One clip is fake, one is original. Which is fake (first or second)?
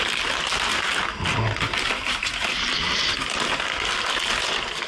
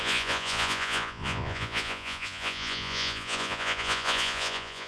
second